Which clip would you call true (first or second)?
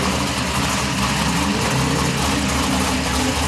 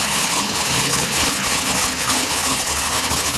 first